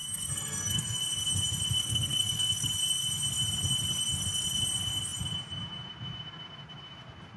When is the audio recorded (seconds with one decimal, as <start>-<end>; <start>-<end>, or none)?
1.0-1.8; 2.7-7.4